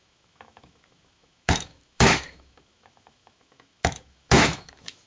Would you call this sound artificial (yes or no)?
yes